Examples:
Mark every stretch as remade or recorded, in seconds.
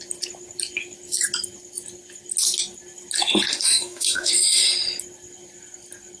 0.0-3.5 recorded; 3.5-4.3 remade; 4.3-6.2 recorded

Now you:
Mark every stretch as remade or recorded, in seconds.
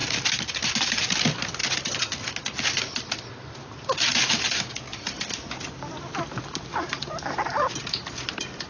0.0-6.7 recorded; 6.7-7.8 remade; 7.8-8.7 recorded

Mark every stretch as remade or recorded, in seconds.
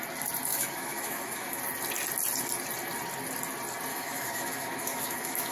0.0-0.5 recorded; 0.5-1.6 remade; 1.6-3.9 recorded; 3.9-5.5 remade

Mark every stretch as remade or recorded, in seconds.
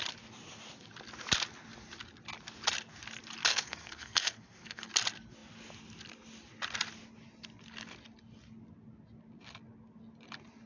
0.0-3.5 recorded; 3.5-4.9 remade; 4.9-10.7 recorded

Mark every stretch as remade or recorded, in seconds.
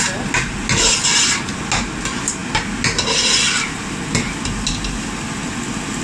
0.0-6.0 recorded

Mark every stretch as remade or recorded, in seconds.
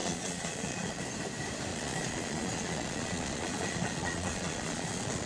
0.0-1.0 remade; 1.0-1.7 recorded; 1.7-5.3 remade